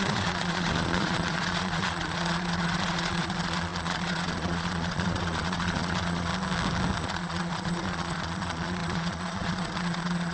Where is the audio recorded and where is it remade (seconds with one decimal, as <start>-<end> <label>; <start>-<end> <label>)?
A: 0.0-6.3 remade; 6.3-7.0 recorded; 7.0-10.3 remade